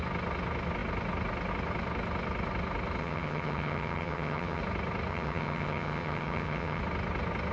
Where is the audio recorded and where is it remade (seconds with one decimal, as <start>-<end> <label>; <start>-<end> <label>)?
0.0-3.0 recorded; 3.0-4.6 remade; 4.6-5.1 recorded; 5.1-6.8 remade; 6.8-7.5 recorded